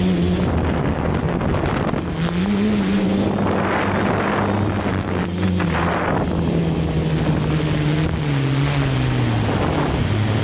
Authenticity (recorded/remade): recorded